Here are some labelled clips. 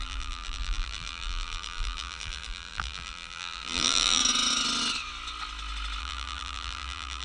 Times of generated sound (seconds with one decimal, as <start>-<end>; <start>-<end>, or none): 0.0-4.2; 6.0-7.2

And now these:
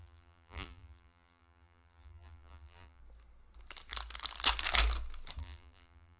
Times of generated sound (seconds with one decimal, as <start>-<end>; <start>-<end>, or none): 0.0-3.0; 5.4-6.2

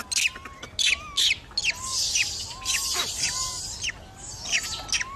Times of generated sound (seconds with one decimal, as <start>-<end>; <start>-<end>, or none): none